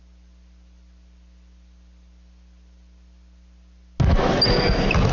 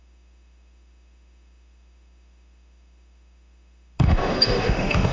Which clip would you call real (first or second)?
first